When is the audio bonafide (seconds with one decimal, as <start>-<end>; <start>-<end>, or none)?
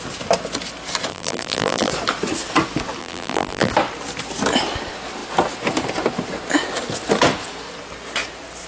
0.0-1.1; 1.9-3.0; 3.7-8.7